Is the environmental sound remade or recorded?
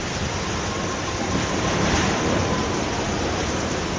recorded